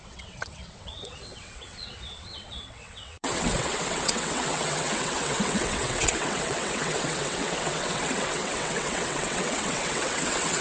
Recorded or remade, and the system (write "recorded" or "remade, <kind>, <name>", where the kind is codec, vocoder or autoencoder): remade, vocoder, WaveNeXt